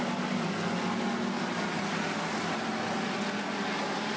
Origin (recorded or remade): recorded